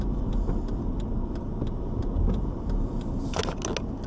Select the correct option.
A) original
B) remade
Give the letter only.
A